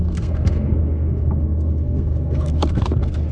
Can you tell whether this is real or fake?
fake